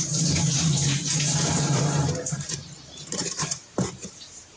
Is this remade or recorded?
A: remade